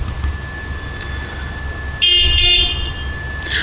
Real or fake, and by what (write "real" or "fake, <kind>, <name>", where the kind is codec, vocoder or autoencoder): real